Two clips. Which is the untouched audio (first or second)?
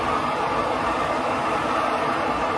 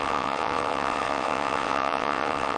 first